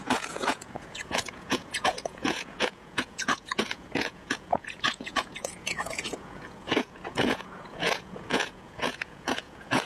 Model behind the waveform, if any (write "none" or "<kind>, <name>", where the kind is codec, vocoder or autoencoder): vocoder, Vocos